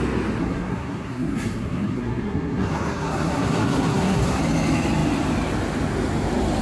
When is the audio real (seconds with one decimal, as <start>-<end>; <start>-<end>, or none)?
0.0-0.4; 4.4-6.6